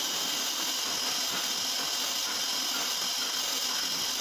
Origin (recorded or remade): recorded